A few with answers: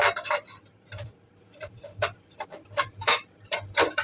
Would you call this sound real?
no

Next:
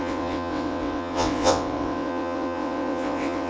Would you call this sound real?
no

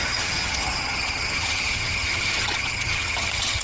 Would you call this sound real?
no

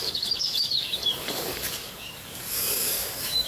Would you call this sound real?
no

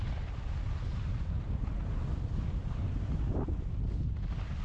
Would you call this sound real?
yes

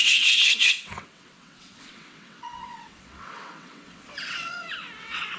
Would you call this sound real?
no